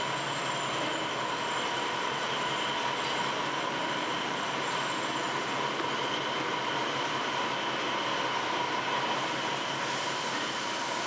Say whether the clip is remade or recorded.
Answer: recorded